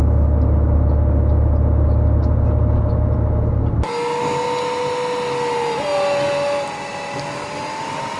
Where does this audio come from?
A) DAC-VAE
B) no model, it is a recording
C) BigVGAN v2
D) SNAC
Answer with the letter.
B